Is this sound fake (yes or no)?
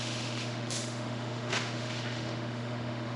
yes